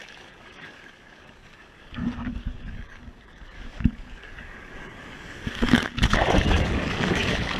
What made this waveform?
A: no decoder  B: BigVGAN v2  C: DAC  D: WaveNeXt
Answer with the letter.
C